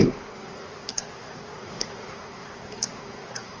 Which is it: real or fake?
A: fake